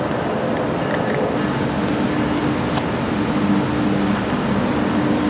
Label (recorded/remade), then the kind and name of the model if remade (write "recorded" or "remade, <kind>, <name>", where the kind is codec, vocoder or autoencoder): recorded